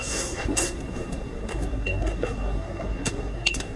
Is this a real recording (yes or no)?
no